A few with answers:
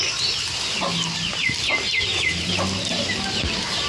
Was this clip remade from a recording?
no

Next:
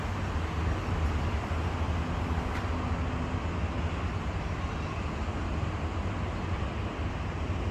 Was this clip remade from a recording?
no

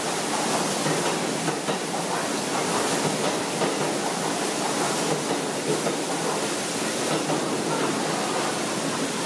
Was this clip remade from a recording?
no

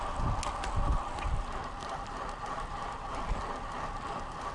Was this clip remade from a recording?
no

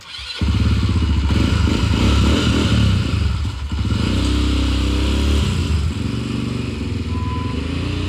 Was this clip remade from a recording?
no